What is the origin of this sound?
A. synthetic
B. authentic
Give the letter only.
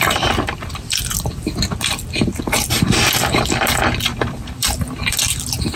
A